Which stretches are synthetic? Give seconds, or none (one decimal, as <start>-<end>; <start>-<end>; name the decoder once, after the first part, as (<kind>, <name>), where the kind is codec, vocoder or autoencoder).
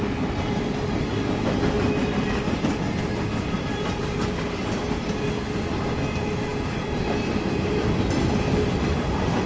none